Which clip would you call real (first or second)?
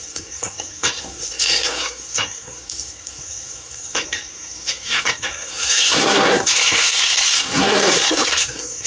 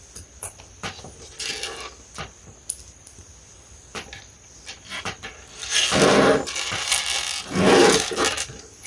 second